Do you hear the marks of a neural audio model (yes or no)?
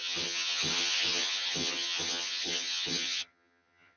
yes